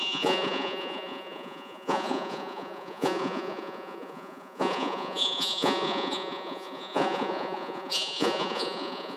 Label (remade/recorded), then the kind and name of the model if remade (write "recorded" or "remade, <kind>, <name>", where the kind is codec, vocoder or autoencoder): remade, vocoder, Vocos